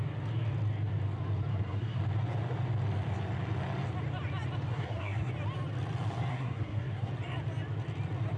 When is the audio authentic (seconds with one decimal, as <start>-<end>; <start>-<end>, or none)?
0.0-1.5; 2.0-4.7; 5.3-6.3; 7.1-8.4